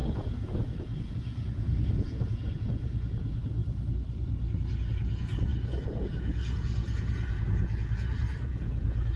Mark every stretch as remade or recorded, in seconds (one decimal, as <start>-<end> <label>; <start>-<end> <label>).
0.0-3.6 remade; 3.6-4.9 recorded; 4.9-9.2 remade